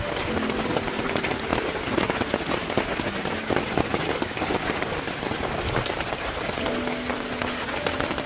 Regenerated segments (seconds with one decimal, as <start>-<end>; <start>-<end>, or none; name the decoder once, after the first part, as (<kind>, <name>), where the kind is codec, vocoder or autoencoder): none